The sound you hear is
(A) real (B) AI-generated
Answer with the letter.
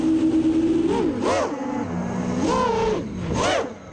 A